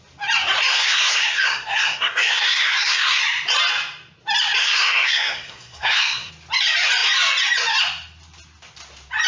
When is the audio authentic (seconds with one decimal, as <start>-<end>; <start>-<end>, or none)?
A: 0.0-0.7; 3.2-4.6; 6.3-9.3